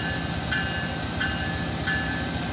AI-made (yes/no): no